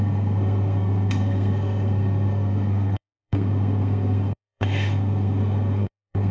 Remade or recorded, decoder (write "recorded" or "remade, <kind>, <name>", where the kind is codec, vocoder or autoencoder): remade, codec, SNAC